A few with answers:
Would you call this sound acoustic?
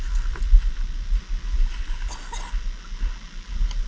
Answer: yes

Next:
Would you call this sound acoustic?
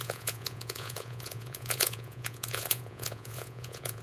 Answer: no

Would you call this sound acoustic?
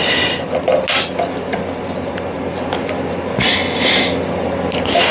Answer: yes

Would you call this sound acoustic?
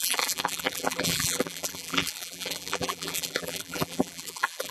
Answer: no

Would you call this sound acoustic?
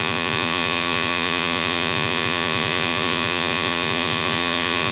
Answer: no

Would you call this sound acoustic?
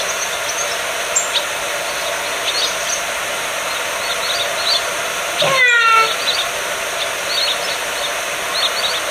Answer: yes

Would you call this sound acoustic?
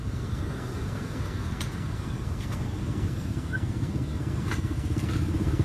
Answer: no